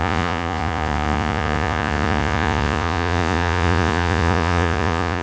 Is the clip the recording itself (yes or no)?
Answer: no